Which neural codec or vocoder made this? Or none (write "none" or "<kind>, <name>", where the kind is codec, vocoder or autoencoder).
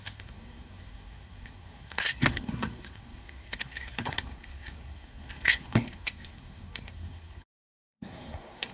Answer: codec, SNAC